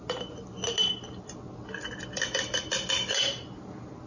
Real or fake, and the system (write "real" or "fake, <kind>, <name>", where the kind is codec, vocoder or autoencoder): real